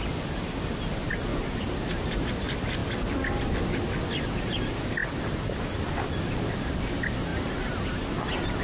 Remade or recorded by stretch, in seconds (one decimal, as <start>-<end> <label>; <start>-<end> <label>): 0.0-1.3 recorded; 1.3-2.3 remade; 2.3-7.3 recorded; 7.3-8.1 remade; 8.1-8.6 recorded